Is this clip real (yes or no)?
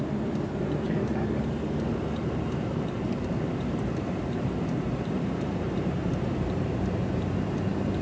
no